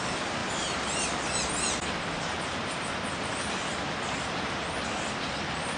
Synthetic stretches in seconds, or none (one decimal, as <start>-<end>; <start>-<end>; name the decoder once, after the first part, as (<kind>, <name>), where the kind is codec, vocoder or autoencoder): none